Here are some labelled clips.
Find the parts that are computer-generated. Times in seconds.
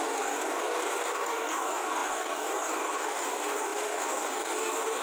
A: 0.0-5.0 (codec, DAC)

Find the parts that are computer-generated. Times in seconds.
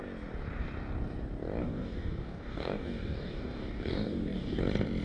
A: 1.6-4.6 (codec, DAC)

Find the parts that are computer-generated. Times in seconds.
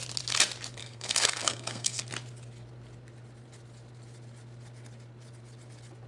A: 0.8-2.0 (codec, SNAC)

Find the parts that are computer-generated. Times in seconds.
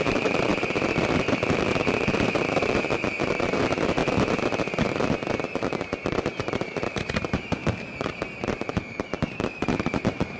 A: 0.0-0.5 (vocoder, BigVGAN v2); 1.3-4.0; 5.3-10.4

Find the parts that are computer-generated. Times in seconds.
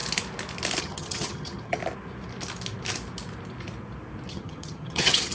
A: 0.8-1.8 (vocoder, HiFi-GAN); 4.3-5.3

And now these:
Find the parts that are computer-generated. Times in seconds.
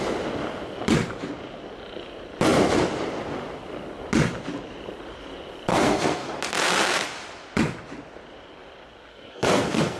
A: 5.7-6.3 (codec, SNAC); 9.1-10.0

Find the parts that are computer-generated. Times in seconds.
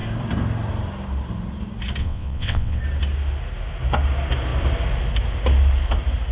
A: 2.0-2.8 (vocoder, WaveNeXt)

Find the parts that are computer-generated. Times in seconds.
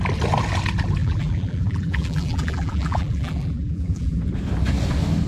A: 1.0-4.2 (vocoder, BigVGAN v2)